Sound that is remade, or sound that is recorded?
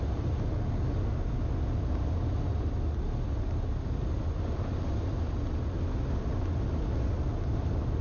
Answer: recorded